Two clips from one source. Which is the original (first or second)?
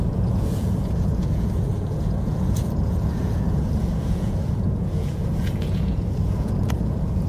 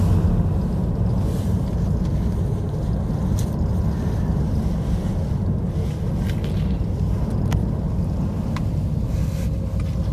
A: second